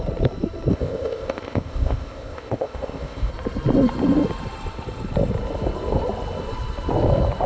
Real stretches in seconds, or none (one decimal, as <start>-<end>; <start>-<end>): 0.0-0.7; 3.3-7.5

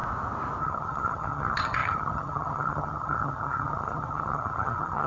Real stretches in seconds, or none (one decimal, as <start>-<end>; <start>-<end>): 0.0-0.6

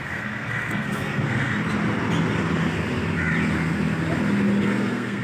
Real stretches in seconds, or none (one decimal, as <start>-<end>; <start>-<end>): 1.5-4.6

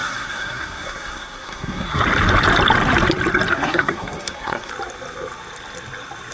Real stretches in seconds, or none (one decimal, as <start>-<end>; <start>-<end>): 2.0-3.5; 4.7-6.3

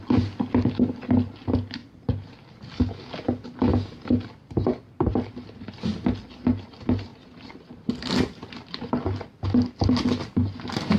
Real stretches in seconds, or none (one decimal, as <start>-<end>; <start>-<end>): 0.0-11.0

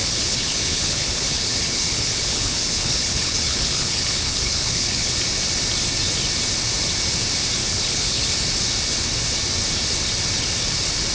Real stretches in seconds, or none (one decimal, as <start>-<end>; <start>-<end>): 5.1-7.6; 8.2-11.1